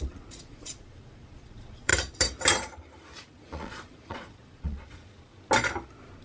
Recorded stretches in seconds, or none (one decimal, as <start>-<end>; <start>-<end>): 1.9-3.3; 5.3-6.2